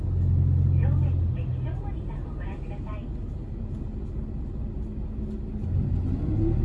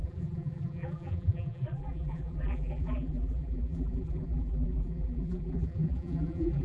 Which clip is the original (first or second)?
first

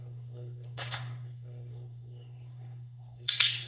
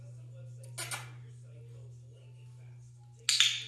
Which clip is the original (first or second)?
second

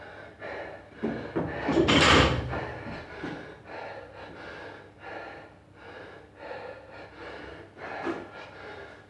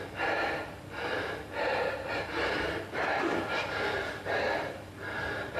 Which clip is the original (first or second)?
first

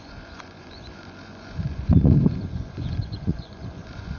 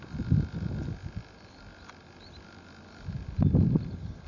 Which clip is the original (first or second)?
second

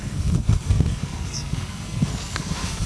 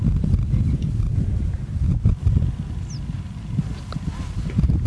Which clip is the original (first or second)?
second